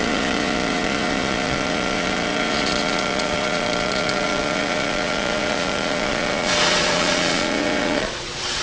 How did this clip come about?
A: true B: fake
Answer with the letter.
B